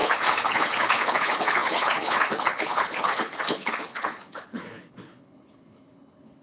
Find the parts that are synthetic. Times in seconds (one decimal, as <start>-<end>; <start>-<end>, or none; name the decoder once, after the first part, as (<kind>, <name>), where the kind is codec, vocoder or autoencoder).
0.0-6.4 (codec, HILCodec)